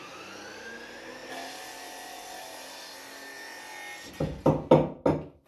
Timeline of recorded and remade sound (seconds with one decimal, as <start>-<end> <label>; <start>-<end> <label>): 0.0-5.5 recorded